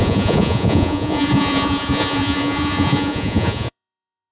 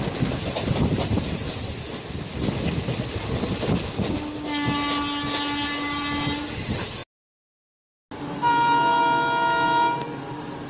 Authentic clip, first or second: second